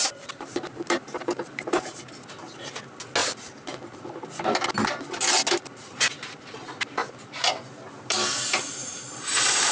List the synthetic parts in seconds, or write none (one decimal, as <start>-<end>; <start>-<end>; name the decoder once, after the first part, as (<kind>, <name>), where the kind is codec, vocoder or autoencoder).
0.0-2.0 (vocoder, BigVGAN v2); 7.0-7.5; 8.8-9.7